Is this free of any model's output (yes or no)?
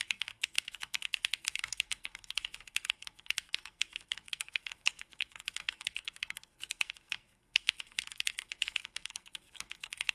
no